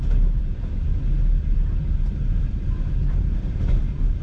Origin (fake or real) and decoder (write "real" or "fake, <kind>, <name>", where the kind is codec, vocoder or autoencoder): fake, vocoder, BigVGAN v2